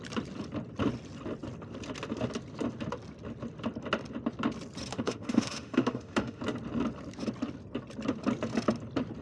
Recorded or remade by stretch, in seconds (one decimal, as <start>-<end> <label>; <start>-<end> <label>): 0.0-4.9 recorded; 4.9-6.4 remade; 6.4-9.2 recorded